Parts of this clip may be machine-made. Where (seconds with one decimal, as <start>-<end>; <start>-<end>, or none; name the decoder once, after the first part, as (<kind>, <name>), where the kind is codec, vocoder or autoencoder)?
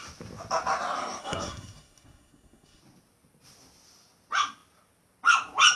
1.2-2.8 (codec, SNAC)